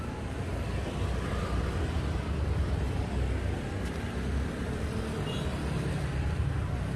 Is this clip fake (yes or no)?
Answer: no